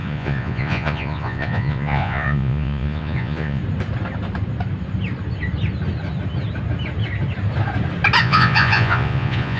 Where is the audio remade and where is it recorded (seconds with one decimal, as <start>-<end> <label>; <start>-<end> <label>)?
0.0-3.6 remade; 3.6-8.2 recorded; 8.2-9.6 remade